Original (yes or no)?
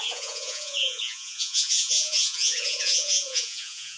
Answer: no